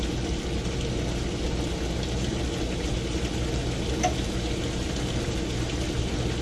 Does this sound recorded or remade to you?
recorded